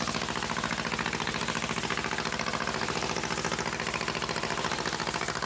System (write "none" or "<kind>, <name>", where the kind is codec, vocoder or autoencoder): none